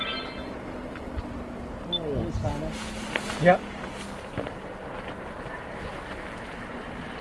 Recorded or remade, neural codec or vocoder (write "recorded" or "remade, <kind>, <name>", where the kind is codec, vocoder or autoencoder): recorded